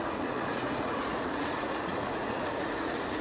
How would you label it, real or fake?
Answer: fake